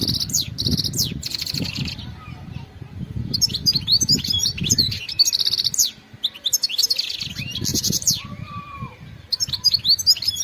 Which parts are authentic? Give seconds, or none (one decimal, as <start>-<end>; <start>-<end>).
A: 0.0-1.3; 5.1-7.7; 9.8-10.4